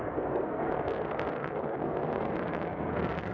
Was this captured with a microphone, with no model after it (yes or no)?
no